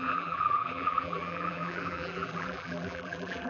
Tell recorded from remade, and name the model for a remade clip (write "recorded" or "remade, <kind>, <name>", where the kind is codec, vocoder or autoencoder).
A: remade, vocoder, BigVGAN v2